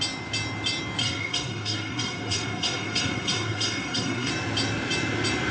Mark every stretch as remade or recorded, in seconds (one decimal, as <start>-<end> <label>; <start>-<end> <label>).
0.0-1.0 recorded; 1.0-4.3 remade; 4.3-5.5 recorded